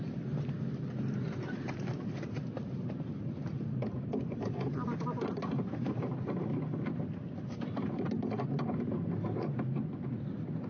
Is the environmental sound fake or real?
real